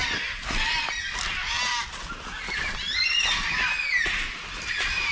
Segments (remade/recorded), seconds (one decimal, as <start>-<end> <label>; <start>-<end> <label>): 0.0-5.1 recorded